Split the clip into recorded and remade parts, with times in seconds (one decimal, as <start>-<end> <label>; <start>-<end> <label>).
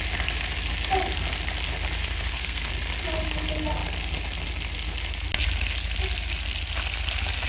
0.0-2.0 recorded; 2.0-2.7 remade; 2.7-7.5 recorded